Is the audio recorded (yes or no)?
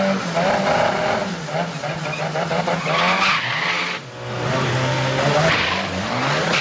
yes